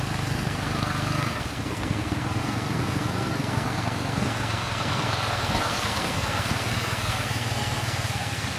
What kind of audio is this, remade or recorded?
remade